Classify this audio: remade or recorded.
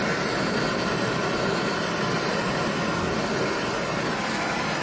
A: remade